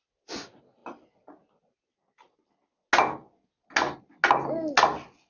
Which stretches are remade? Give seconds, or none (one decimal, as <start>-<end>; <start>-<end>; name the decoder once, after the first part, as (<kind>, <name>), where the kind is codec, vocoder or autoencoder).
none